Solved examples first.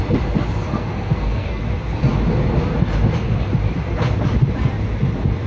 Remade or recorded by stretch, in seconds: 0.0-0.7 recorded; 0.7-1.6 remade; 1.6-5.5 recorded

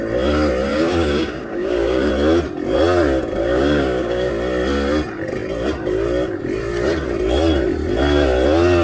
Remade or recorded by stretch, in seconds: 0.0-0.7 recorded; 0.7-2.1 remade; 2.1-3.4 recorded; 3.4-4.3 remade; 4.3-8.8 recorded

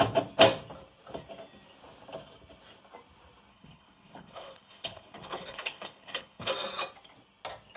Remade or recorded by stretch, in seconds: 0.0-3.5 recorded; 3.5-6.5 remade; 6.5-7.8 recorded

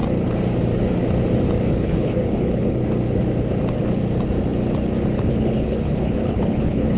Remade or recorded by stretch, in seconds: 0.0-1.7 recorded; 1.7-2.8 remade; 2.8-5.2 recorded; 5.2-7.0 remade